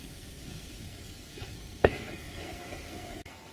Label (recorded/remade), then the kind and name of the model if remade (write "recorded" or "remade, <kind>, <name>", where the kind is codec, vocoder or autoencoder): remade, codec, SNAC